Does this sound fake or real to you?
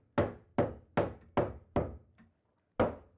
real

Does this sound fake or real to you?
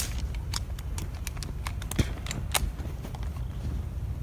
real